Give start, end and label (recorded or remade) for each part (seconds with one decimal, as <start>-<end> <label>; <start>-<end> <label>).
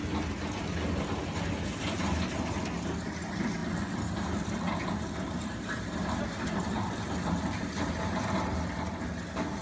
0.0-1.5 remade; 1.5-9.6 recorded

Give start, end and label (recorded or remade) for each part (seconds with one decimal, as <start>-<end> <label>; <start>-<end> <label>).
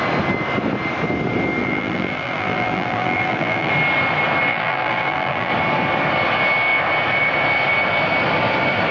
0.0-1.6 recorded; 1.6-3.7 remade; 3.7-4.5 recorded; 4.5-5.5 remade; 5.5-8.9 recorded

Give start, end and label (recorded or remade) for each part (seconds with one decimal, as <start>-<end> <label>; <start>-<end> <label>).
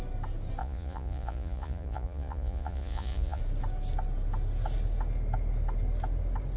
0.0-0.6 recorded; 0.6-3.4 remade; 3.4-6.6 recorded